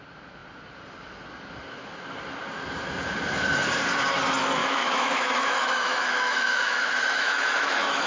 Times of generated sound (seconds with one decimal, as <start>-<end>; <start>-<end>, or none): 4.6-8.1